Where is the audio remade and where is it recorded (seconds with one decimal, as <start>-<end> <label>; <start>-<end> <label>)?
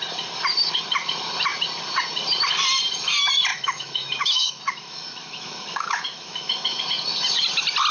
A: 0.0-3.5 recorded; 3.5-6.8 remade; 6.8-7.9 recorded